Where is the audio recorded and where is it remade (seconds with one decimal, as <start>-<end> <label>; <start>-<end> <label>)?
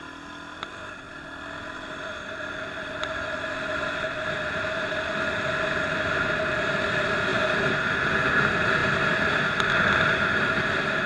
0.0-11.1 recorded